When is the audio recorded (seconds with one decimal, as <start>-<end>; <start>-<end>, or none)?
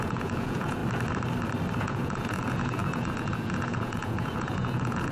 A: 0.8-1.8